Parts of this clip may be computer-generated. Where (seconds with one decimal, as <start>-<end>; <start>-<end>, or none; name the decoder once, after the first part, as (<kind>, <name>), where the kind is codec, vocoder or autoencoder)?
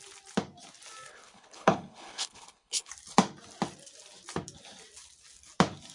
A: 1.1-2.9 (codec, HILCodec)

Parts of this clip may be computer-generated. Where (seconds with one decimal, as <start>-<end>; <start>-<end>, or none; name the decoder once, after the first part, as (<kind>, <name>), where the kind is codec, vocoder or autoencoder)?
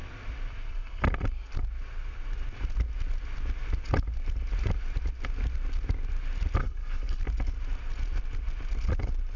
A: 6.6-7.2 (codec, HILCodec)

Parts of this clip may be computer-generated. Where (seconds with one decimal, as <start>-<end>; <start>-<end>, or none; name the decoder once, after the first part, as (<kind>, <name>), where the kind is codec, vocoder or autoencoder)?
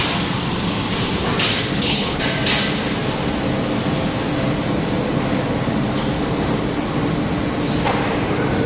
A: 1.7-2.2 (codec, HILCodec)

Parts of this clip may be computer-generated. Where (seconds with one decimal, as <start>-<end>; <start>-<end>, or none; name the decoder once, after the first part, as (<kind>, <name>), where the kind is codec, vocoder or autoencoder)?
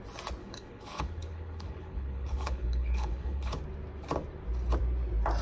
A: 0.4-3.6 (codec, HILCodec)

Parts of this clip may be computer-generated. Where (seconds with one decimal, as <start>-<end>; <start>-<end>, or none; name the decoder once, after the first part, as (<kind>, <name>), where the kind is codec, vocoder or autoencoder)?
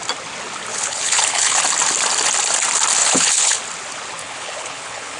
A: 0.7-1.6 (codec, HILCodec); 3.0-3.6; 4.2-5.2